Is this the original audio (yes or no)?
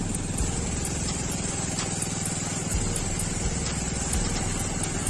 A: yes